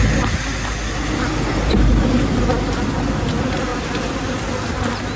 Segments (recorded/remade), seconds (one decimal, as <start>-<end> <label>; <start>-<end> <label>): 0.0-1.5 recorded; 1.5-2.4 remade; 2.4-5.2 recorded